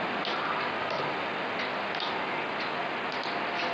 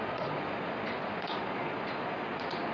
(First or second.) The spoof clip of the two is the second